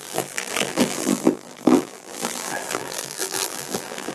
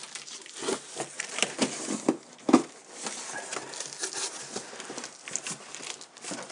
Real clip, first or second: second